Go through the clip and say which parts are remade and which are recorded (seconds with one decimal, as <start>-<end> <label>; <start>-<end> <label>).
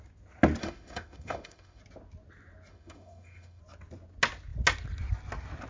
0.0-0.6 recorded; 0.6-1.8 remade; 1.8-2.7 recorded; 2.7-3.6 remade; 3.6-5.7 recorded